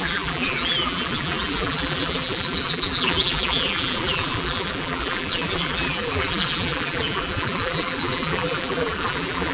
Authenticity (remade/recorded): remade